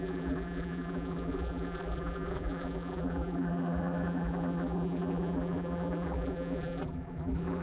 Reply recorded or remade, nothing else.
remade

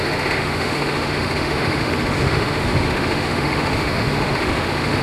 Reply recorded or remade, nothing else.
remade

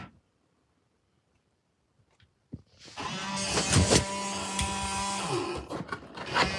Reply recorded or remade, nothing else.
recorded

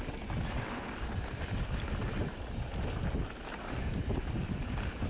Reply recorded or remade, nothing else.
recorded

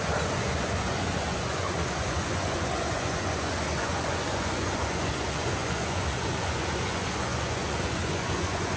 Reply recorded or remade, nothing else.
remade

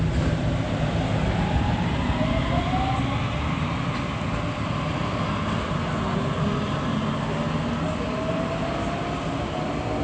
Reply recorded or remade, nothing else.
recorded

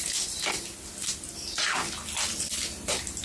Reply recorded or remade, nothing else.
recorded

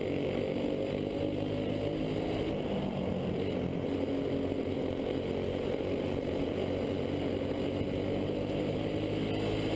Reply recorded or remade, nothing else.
recorded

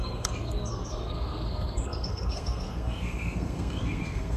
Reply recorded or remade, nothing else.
remade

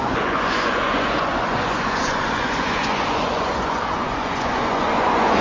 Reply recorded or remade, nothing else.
remade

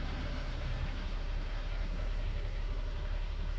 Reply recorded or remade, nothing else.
remade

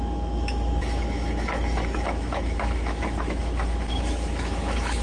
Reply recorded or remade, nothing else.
remade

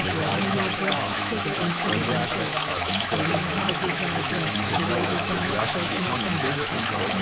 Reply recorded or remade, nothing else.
remade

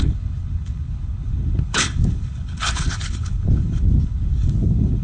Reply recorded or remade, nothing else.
remade